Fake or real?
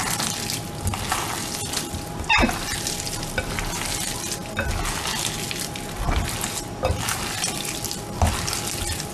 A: real